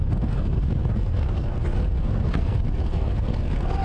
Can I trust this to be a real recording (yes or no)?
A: no